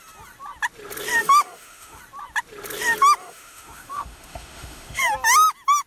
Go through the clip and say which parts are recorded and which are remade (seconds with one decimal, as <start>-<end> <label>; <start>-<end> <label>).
0.0-1.2 recorded; 1.2-2.0 remade; 2.0-3.2 recorded; 3.2-5.0 remade; 5.0-5.9 recorded